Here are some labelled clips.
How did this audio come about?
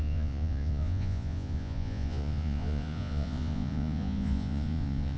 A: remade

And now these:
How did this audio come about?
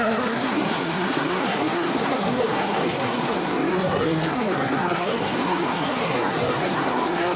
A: remade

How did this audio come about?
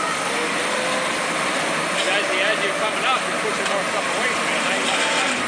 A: recorded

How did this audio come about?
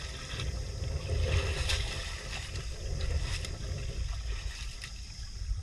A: recorded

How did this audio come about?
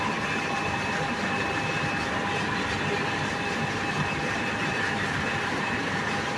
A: remade